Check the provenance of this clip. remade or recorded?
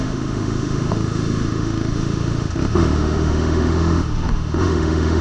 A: remade